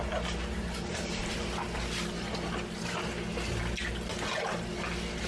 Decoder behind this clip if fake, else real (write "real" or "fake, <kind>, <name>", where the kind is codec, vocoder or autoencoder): real